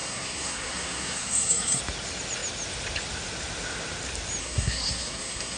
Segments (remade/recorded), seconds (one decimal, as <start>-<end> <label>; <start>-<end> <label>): 0.0-1.8 remade; 1.8-4.4 recorded; 4.4-5.6 remade